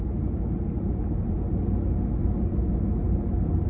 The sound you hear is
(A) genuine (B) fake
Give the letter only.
A